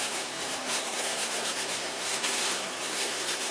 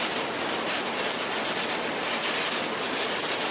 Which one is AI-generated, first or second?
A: first